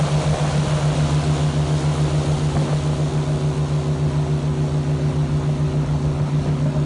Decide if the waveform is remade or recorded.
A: recorded